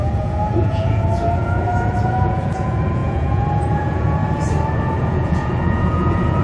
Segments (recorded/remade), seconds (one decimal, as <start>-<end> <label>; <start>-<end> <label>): 0.0-4.2 remade; 4.2-5.0 recorded; 5.0-6.4 remade